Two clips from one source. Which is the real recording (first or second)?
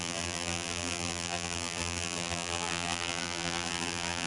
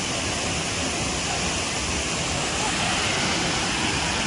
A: second